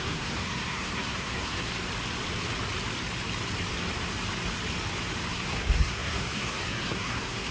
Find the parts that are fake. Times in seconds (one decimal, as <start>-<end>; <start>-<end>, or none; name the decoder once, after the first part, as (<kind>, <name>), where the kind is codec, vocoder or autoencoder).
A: 0.0-1.7 (codec, SNAC); 5.3-7.5